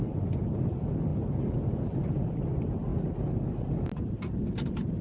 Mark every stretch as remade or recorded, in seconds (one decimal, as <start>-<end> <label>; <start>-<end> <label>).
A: 0.0-5.0 recorded

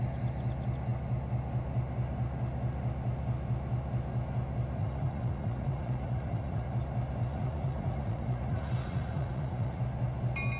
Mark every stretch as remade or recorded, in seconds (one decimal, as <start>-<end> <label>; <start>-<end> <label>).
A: 0.0-4.8 recorded; 4.8-6.7 remade; 6.7-7.2 recorded; 7.2-9.8 remade; 9.8-10.6 recorded